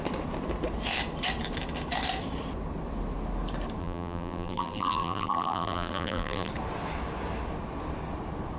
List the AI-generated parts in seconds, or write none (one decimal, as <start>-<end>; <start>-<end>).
3.8-6.5